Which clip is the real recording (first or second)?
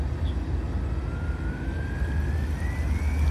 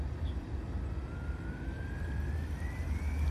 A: first